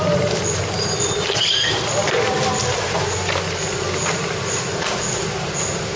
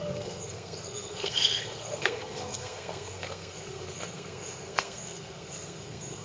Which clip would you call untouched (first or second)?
first